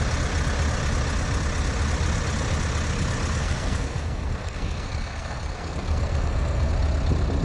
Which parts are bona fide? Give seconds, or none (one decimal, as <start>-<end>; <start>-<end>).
0.0-3.4; 6.7-7.4